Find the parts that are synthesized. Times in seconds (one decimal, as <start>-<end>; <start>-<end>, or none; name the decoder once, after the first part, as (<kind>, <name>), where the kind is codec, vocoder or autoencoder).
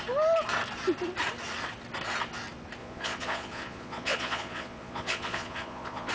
2.8-6.1 (vocoder, Vocos)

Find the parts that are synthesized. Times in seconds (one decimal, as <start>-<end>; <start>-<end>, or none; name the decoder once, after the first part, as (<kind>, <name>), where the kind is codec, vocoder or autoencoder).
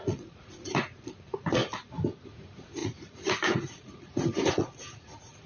0.0-1.6 (vocoder, Vocos); 2.2-5.5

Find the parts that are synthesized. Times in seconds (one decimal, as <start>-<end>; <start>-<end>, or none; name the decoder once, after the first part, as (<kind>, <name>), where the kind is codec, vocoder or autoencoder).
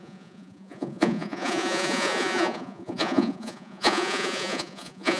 0.0-5.2 (vocoder, Vocos)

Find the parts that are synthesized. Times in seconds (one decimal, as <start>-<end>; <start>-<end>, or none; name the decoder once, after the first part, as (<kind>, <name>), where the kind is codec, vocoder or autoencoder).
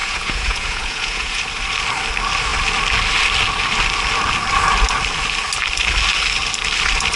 0.0-1.4 (vocoder, Vocos)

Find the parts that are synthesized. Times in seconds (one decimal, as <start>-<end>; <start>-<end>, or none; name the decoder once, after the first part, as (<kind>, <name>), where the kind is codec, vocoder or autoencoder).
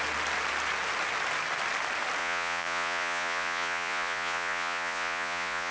2.2-5.7 (vocoder, Vocos)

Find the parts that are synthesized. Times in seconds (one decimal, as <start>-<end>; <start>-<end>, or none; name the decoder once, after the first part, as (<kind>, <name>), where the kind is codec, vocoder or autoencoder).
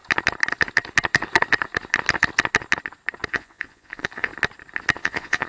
3.3-4.3 (vocoder, Vocos); 5.0-5.5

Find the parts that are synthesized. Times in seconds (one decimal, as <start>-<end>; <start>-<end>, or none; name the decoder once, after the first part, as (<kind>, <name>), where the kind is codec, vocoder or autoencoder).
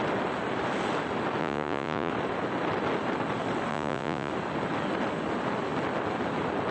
1.4-2.1 (vocoder, Vocos); 3.7-4.3